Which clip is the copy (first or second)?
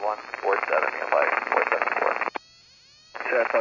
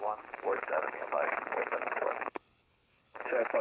second